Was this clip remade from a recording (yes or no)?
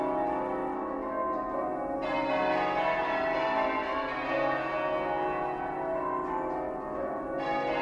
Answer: no